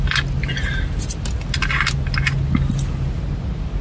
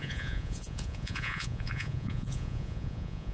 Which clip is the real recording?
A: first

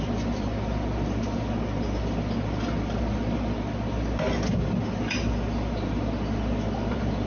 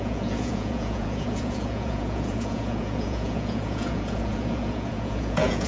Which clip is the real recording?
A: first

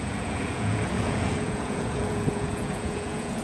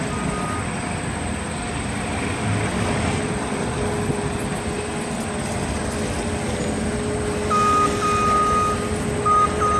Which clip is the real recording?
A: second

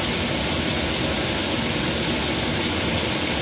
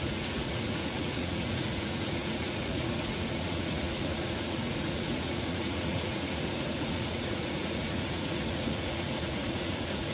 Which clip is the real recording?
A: first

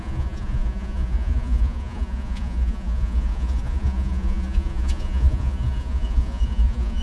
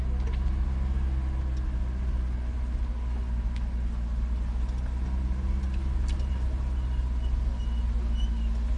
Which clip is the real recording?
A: second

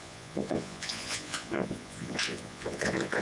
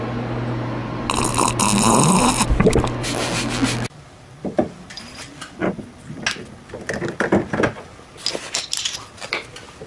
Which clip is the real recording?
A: second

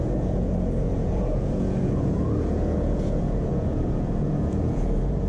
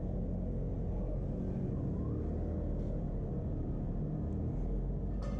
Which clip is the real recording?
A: second